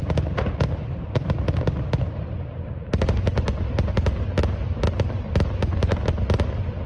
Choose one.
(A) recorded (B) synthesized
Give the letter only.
A